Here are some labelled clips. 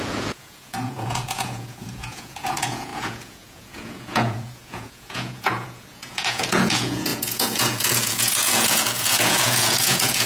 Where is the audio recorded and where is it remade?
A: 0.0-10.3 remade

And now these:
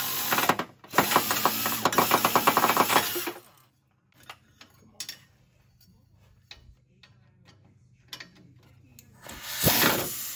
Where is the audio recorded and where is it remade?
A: 0.0-10.4 recorded

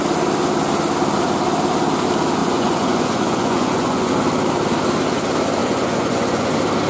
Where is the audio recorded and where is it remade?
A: 0.0-2.4 recorded; 2.4-4.1 remade; 4.1-5.6 recorded; 5.6-6.5 remade; 6.5-6.9 recorded

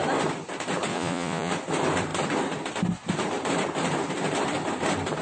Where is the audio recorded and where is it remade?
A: 0.0-0.9 recorded; 0.9-1.5 remade; 1.5-5.2 recorded